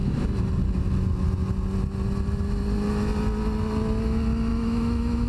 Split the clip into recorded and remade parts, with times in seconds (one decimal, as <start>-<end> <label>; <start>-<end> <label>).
0.0-4.5 recorded; 4.5-5.3 remade